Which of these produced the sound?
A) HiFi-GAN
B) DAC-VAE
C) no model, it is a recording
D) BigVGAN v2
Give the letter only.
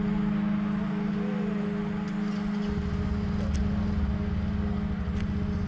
C